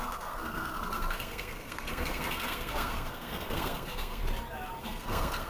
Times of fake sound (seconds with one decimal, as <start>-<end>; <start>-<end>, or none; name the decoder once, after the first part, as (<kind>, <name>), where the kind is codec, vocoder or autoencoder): 0.0-4.2 (codec, SNAC); 4.8-5.5